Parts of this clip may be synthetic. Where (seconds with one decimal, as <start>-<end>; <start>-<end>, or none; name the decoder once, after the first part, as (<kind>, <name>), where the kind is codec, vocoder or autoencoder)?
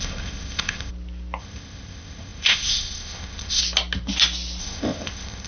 0.0-0.9 (codec, ZipCodec); 1.4-3.6; 4.6-5.5